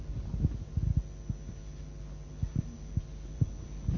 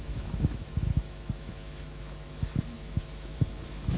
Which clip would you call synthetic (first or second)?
second